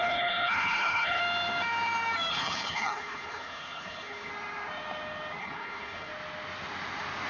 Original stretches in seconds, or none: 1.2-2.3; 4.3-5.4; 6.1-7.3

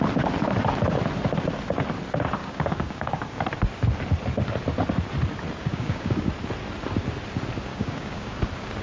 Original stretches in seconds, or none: 0.0-2.4; 3.4-5.7; 6.3-7.7; 8.4-8.8